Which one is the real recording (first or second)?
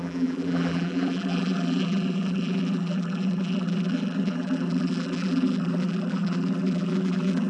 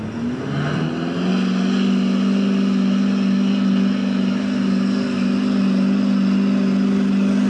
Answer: second